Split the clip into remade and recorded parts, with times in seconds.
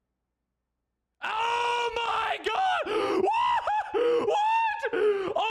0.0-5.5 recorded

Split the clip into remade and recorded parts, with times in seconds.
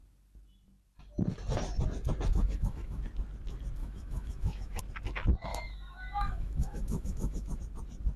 0.0-2.3 recorded; 2.3-3.0 remade; 3.0-3.8 recorded; 3.8-4.8 remade; 4.8-5.5 recorded; 5.5-7.6 remade; 7.6-8.2 recorded